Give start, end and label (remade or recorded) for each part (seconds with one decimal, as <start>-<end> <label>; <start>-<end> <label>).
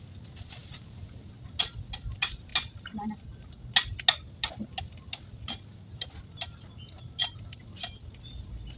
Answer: 0.0-8.8 recorded